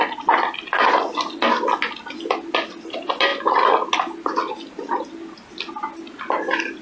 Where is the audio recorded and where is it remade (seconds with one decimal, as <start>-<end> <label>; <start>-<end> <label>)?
0.0-6.8 recorded